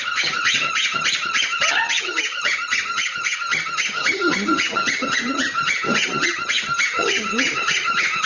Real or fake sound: fake